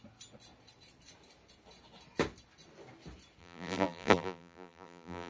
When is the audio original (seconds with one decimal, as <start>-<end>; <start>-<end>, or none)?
0.0-3.4